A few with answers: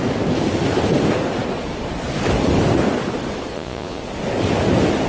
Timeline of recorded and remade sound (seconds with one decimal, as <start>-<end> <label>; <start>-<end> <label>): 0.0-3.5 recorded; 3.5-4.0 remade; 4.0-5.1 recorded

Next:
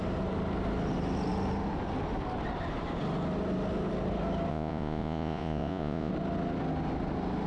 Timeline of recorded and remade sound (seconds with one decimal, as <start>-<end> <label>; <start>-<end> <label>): 0.0-4.5 recorded; 4.5-6.1 remade; 6.1-7.5 recorded

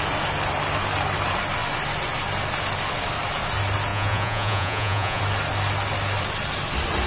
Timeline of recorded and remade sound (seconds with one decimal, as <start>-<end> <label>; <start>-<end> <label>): 0.0-3.9 recorded; 3.9-5.2 remade; 5.2-7.1 recorded

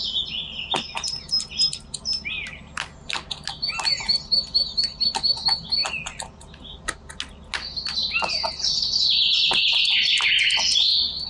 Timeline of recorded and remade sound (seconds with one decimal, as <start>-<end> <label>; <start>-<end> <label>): 0.0-11.3 recorded

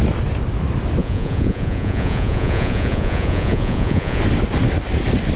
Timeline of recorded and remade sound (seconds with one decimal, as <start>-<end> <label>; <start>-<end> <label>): 0.0-1.0 recorded; 1.0-4.2 remade; 4.2-5.4 recorded